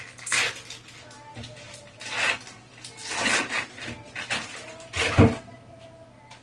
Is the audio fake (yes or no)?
no